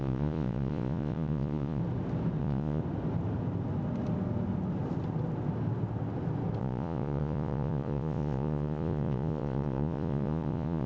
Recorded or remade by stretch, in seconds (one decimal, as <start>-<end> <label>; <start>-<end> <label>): 0.0-1.8 remade; 1.8-2.4 recorded; 2.4-2.8 remade; 2.8-6.6 recorded; 6.6-10.9 remade